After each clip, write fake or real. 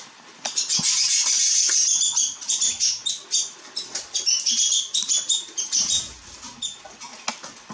real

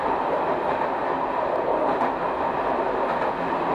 real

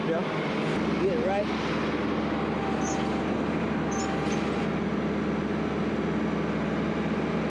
real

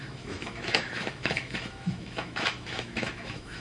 fake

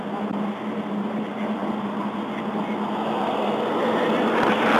real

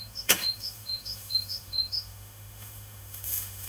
fake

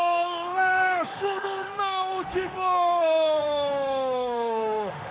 fake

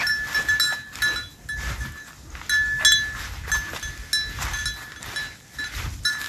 real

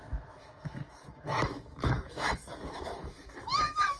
fake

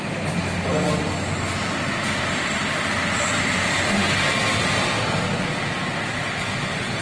real